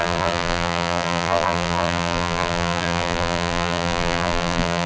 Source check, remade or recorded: remade